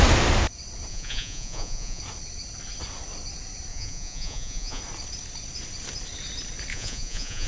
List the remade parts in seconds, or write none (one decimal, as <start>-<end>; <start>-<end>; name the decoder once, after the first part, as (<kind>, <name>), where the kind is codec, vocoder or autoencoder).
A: 0.9-2.0 (vocoder, Vocos); 3.7-4.8; 6.7-7.5

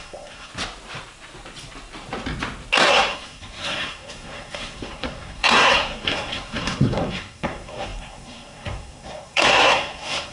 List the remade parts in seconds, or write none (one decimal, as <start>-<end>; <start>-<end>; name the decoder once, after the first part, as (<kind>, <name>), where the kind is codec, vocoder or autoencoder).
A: 0.0-0.5 (codec, SNAC); 2.9-10.3

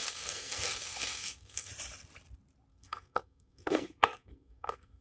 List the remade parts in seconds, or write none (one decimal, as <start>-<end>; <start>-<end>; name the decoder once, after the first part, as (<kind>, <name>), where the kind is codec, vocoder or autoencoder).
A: 0.0-1.7 (codec, SNAC); 2.7-5.0

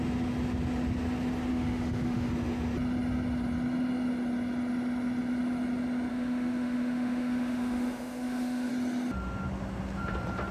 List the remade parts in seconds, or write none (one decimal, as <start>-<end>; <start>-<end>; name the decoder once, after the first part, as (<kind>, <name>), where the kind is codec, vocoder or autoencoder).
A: 1.5-2.3 (autoencoder, DAC-VAE); 6.1-8.7

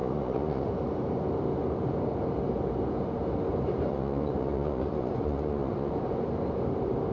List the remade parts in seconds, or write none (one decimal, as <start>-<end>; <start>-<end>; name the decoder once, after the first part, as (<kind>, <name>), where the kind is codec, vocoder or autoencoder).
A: 0.0-0.7 (vocoder, Vocos); 3.9-5.9

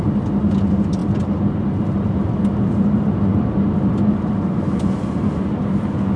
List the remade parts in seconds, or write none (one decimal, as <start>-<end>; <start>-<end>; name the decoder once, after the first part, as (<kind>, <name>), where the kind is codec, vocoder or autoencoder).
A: none

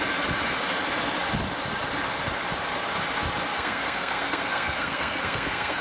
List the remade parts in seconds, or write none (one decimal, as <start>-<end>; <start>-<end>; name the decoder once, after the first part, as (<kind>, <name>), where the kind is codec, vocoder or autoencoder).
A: 3.5-5.8 (codec, SNAC)